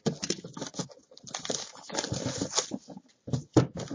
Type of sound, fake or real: real